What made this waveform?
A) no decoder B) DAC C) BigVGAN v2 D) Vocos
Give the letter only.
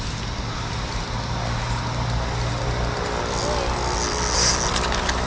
A